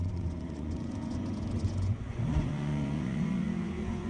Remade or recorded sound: remade